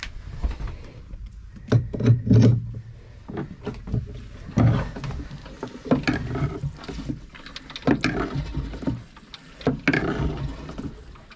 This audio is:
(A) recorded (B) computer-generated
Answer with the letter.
A